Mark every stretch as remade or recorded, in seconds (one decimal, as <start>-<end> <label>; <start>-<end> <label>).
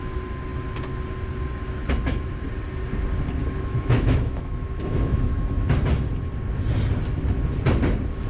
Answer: 0.0-3.4 recorded; 3.4-5.7 remade; 5.7-8.3 recorded